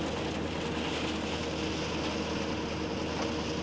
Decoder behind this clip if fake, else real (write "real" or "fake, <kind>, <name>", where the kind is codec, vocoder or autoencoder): real